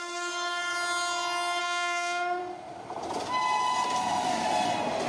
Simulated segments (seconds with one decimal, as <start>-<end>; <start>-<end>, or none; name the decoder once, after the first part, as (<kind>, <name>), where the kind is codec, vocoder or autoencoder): 0.0-0.7 (codec, DAC); 1.6-2.4